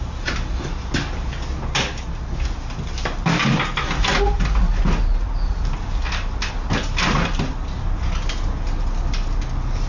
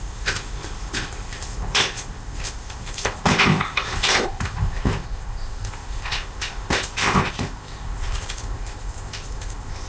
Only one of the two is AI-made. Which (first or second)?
second